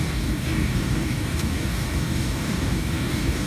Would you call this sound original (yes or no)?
no